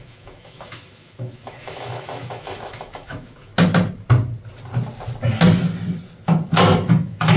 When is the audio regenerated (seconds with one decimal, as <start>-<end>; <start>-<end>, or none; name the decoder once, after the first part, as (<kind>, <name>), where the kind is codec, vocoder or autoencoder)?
0.0-3.5 (autoencoder, DAC-VAE); 6.9-7.4